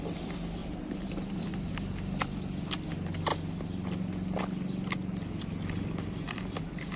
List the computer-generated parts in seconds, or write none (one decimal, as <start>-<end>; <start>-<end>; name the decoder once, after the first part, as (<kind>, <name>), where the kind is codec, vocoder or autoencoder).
0.6-1.7 (vocoder, BigVGAN v2)

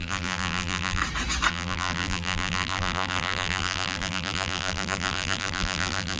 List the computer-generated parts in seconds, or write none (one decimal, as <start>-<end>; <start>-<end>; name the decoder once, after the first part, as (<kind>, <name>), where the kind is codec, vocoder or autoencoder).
0.0-1.0 (vocoder, BigVGAN v2); 1.5-6.2

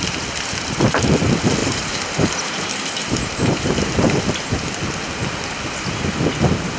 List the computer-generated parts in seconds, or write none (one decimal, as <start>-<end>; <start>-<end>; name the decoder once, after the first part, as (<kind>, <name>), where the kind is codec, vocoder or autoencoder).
1.6-4.2 (vocoder, BigVGAN v2)

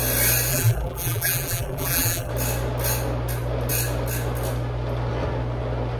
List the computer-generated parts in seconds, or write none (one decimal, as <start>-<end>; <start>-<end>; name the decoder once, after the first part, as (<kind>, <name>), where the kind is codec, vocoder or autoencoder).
0.5-2.3 (vocoder, BigVGAN v2)